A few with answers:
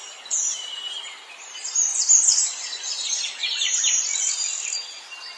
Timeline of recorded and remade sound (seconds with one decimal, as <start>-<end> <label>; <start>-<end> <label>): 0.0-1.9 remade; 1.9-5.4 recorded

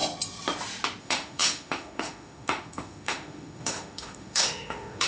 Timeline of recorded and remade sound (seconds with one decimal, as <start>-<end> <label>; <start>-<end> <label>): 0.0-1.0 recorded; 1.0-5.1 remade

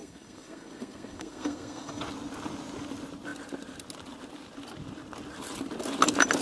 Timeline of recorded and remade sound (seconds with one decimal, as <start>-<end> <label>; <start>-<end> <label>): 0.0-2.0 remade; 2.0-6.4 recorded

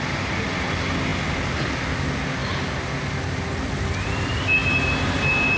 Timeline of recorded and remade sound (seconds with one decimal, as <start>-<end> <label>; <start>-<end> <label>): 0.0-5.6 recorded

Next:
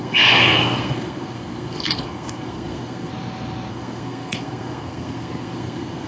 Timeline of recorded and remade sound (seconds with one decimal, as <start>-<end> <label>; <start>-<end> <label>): 0.0-3.1 remade; 3.1-3.7 recorded; 3.7-6.1 remade

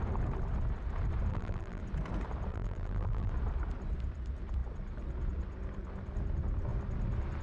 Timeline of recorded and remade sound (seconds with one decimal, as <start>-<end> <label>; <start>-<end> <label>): 0.0-1.3 recorded; 1.3-1.8 remade; 1.8-2.5 recorded; 2.5-3.3 remade; 3.3-7.4 recorded